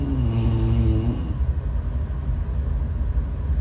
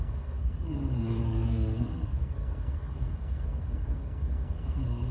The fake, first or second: second